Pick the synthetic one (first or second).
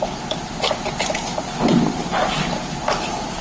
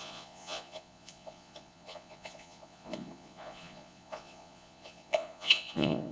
second